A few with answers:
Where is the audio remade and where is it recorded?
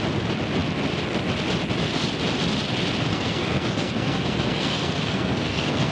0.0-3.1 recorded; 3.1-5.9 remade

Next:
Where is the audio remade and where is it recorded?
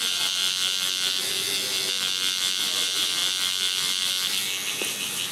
0.0-0.4 remade; 0.4-2.6 recorded; 2.6-3.2 remade; 3.2-4.7 recorded; 4.7-5.3 remade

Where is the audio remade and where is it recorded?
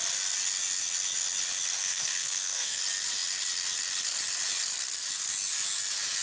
0.0-1.8 recorded; 1.8-2.8 remade; 2.8-6.2 recorded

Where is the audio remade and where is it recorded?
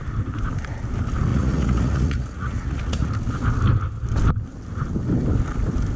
0.0-1.3 recorded; 1.3-3.1 remade; 3.1-6.0 recorded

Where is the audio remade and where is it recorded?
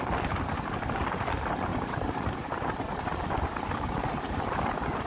0.0-1.7 recorded; 1.7-4.6 remade; 4.6-5.1 recorded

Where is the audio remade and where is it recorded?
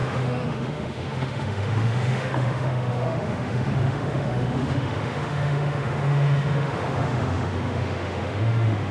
0.0-8.9 remade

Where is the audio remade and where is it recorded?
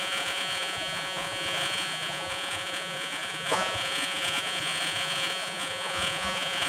0.0-6.7 remade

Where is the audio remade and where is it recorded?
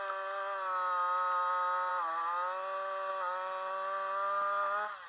0.0-5.1 recorded